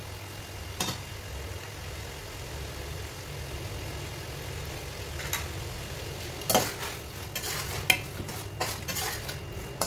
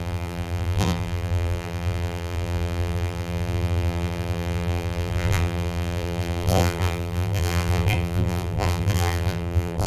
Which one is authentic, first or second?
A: first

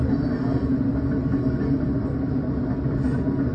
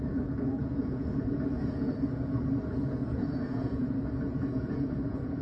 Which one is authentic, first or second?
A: first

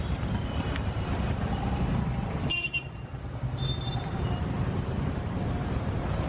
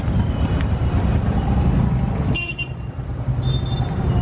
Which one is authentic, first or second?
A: second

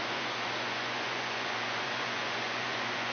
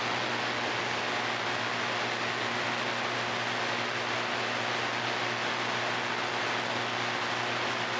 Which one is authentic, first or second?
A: second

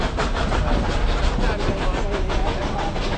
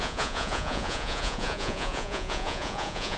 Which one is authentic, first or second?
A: first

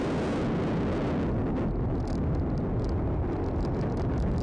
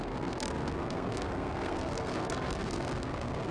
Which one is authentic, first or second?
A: first